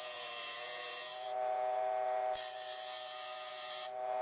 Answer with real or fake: fake